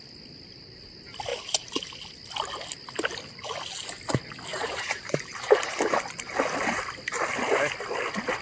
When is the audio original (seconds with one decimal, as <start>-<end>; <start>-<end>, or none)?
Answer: 0.0-4.5; 5.9-8.4